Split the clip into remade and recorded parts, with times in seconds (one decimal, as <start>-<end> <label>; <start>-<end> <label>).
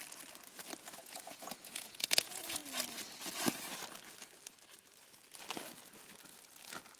0.0-0.9 recorded; 0.9-2.6 remade; 2.6-7.0 recorded